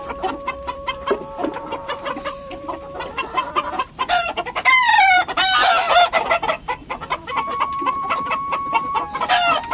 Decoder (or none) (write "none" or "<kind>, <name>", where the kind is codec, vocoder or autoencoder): vocoder, BigVGAN v2